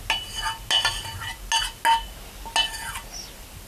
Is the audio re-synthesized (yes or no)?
no